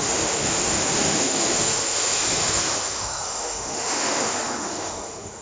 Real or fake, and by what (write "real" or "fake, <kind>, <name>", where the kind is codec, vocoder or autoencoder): fake, autoencoder, DAC-VAE